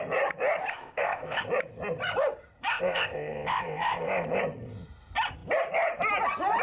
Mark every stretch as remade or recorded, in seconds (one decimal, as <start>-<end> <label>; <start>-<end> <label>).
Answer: 0.0-0.7 recorded; 0.7-1.4 remade; 1.4-2.7 recorded; 2.7-4.4 remade; 4.4-6.6 recorded